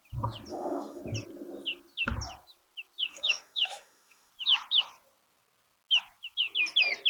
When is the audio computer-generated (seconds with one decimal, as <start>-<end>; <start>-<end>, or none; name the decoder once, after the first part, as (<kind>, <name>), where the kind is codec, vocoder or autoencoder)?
0.5-1.0 (autoencoder, DAC-VAE); 3.1-4.3